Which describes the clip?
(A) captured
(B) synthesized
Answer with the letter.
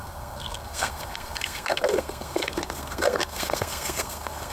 B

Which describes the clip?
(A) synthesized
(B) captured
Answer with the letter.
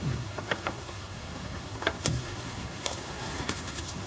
A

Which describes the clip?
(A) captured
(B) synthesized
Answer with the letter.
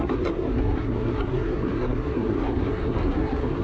B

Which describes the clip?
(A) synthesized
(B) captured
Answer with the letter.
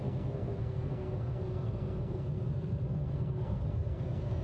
A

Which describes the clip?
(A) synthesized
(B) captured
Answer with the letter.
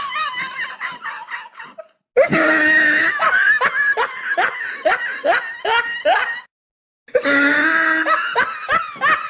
B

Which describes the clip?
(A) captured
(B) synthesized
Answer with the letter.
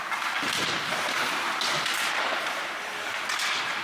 A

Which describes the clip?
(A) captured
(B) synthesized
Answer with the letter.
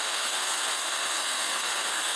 B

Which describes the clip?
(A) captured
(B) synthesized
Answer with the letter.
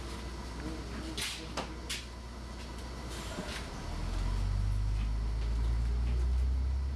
A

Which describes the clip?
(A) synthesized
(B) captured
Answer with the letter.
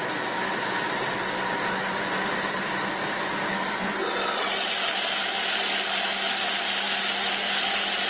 B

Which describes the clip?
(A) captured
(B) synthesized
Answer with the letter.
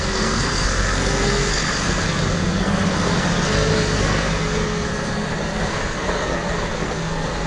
B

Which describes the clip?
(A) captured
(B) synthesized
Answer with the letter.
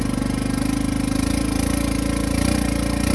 A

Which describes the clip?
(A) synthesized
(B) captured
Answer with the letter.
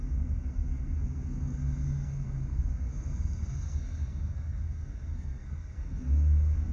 A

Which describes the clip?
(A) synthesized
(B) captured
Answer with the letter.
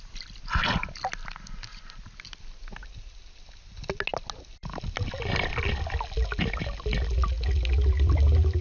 B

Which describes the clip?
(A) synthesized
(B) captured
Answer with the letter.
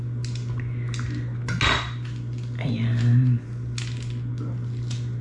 B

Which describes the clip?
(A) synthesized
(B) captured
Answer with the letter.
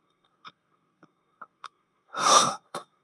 A